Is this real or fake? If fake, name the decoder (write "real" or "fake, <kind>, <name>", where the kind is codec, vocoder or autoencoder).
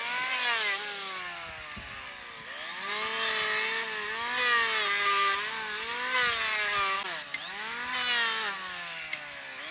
real